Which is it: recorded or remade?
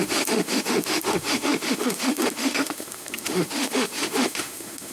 remade